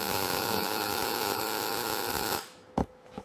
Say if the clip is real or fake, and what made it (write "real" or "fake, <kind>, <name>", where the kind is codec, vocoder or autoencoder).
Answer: fake, autoencoder, DAC-VAE